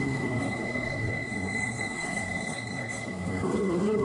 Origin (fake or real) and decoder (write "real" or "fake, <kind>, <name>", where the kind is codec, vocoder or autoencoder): fake, codec, SNAC